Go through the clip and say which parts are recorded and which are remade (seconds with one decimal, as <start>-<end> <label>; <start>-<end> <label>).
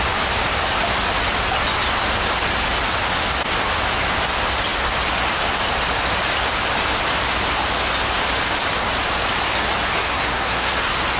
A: 0.0-10.0 recorded; 10.0-10.7 remade; 10.7-11.2 recorded